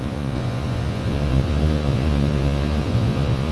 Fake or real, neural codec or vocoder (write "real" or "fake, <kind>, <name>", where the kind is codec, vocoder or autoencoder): fake, vocoder, Vocos